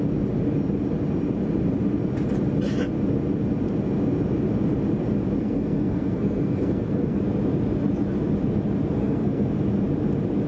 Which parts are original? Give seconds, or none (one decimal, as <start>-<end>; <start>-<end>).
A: 0.0-5.4; 7.2-9.0; 9.5-10.5

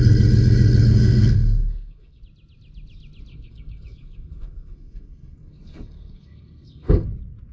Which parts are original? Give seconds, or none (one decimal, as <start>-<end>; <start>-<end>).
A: 0.0-0.9; 2.2-3.3; 7.1-7.5

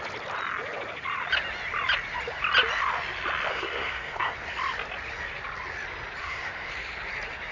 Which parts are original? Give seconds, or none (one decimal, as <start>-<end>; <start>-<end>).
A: 0.0-3.5; 4.3-6.2; 6.7-7.5

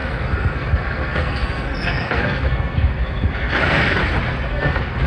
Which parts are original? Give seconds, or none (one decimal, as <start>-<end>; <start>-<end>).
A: 4.0-4.5

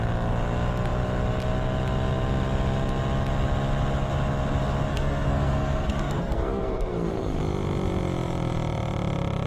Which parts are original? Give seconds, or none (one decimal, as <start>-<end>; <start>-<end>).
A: 0.0-4.9; 7.4-9.5

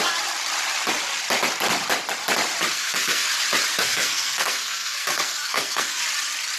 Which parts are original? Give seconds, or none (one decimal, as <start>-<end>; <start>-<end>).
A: 0.0-2.7; 3.3-3.7; 6.0-6.6

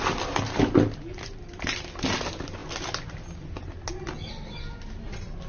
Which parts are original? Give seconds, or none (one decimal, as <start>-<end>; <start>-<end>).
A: 0.0-5.5